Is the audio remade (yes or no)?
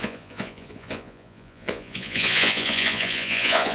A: yes